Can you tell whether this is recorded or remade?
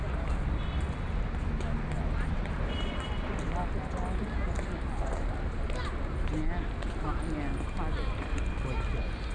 recorded